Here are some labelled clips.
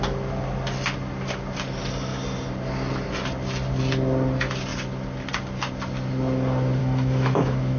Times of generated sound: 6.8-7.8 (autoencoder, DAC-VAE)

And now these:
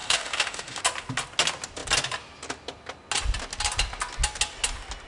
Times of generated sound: 0.0-0.8 (autoencoder, DAC-VAE)

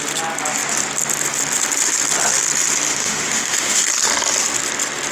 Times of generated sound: 2.9-3.8 (autoencoder, DAC-VAE)

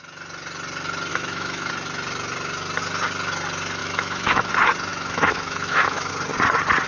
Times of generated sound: 1.1-1.7 (autoencoder, DAC-VAE); 3.8-4.5; 4.9-6.1

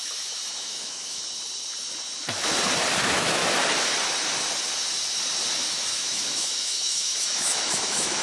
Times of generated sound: 0.0-1.2 (autoencoder, DAC-VAE); 3.0-3.4; 5.5-8.2